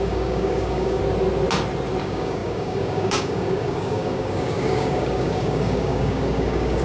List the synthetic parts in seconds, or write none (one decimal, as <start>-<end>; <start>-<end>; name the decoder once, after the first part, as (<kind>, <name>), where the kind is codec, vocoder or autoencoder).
0.0-1.0 (codec, DAC); 2.0-6.8